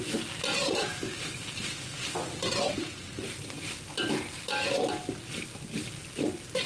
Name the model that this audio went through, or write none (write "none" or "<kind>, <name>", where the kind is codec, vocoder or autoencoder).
none